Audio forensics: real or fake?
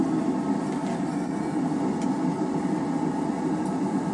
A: real